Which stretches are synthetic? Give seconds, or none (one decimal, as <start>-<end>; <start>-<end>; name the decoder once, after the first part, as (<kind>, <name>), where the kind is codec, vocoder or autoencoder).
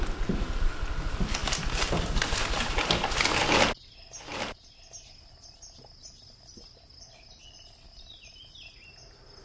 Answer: none